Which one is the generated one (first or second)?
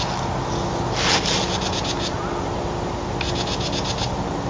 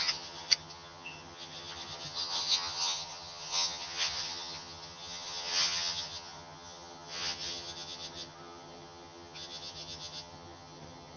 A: second